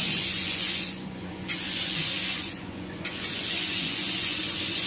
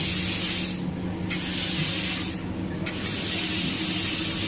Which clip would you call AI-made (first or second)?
first